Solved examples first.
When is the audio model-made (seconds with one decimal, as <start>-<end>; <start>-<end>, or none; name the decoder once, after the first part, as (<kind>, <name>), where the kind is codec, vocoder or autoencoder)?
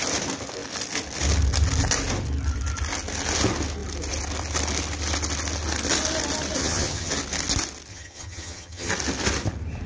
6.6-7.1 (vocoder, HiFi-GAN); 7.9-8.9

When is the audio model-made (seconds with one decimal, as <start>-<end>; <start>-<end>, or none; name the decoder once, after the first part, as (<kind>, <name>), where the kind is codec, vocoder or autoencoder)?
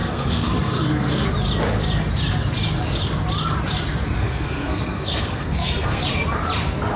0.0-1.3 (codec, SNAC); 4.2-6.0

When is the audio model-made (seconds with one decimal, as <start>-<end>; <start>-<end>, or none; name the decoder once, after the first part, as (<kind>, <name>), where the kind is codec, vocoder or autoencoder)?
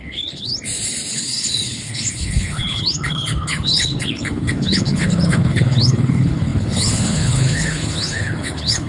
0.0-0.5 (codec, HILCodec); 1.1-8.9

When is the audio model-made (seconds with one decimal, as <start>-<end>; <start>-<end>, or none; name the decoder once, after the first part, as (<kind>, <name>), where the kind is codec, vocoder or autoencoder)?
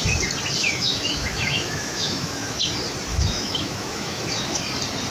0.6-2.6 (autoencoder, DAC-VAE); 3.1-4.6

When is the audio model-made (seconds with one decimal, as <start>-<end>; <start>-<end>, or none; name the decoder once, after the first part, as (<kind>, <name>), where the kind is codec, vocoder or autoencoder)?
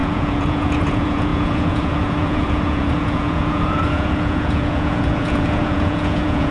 0.0-6.5 (vocoder, Vocos)